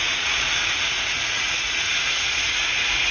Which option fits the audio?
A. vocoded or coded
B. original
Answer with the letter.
A